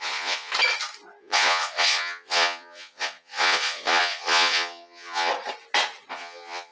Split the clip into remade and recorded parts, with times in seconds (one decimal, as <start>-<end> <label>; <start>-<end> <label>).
0.0-0.5 remade; 0.5-1.2 recorded; 1.2-5.3 remade; 5.3-6.1 recorded; 6.1-6.7 remade